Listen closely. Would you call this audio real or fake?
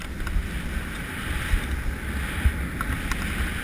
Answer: real